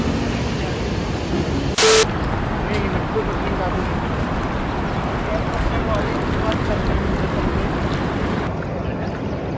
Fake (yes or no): no